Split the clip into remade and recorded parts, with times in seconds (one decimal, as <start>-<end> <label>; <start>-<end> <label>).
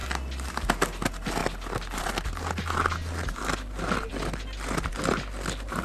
0.0-5.8 recorded